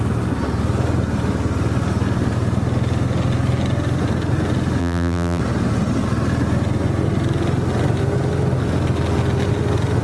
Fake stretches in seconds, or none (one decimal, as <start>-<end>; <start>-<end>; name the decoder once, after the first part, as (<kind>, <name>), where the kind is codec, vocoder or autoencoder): 4.8-5.4 (vocoder, BigVGAN v2)